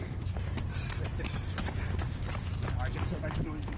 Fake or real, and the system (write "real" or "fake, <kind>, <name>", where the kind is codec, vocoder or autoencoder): real